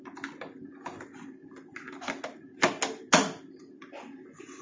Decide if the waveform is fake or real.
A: real